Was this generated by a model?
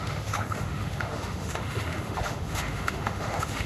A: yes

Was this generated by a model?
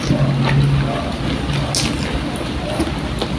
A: no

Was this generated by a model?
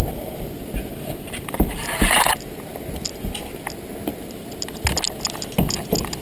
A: no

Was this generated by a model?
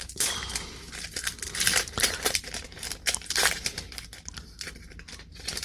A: yes